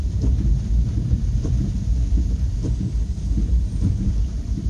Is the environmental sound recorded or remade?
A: remade